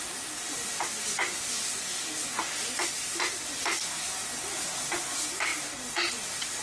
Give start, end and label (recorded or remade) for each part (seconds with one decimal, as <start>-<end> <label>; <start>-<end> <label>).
0.0-6.6 recorded